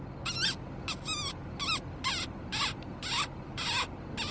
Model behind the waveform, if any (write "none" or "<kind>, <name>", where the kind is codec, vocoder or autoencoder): none